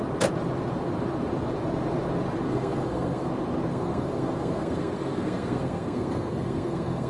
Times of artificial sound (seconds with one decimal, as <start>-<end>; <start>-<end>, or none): 2.5-3.3; 3.7-7.1